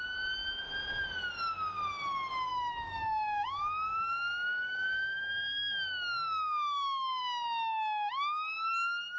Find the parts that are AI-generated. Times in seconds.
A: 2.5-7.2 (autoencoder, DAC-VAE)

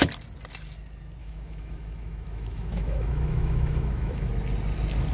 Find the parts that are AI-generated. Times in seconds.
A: 1.2-4.3 (autoencoder, DAC-VAE)

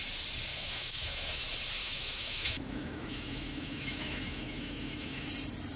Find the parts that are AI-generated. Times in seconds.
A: 0.5-1.4 (autoencoder, DAC-VAE); 1.8-5.3

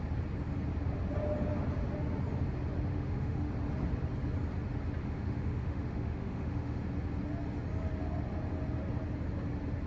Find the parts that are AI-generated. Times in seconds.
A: 2.9-3.5 (autoencoder, DAC-VAE); 5.0-6.8

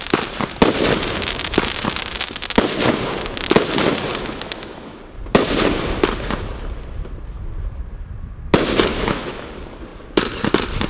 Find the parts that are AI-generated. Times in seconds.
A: 4.1-5.0 (autoencoder, DAC-VAE); 8.9-9.5

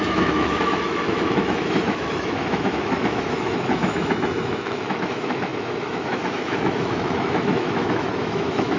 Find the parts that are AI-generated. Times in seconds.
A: 0.0-8.8 (autoencoder, DAC-VAE)

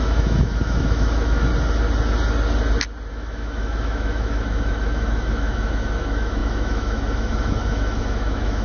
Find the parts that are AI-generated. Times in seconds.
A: 0.0-1.5 (autoencoder, DAC-VAE); 3.1-8.6

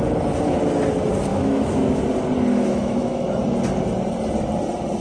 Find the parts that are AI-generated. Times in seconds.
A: 1.3-2.0 (autoencoder, DAC-VAE); 2.5-3.4